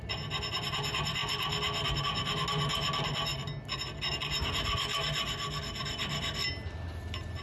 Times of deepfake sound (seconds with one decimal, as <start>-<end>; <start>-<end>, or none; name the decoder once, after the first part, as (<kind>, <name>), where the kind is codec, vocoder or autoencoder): none